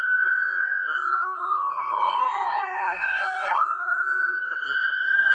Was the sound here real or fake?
fake